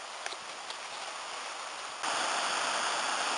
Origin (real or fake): real